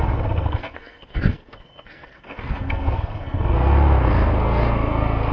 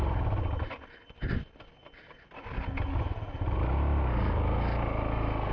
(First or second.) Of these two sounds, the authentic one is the second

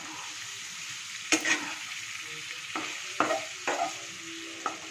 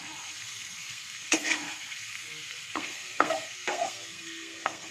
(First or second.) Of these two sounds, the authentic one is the first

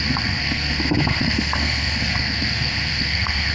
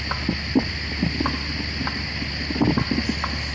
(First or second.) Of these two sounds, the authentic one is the second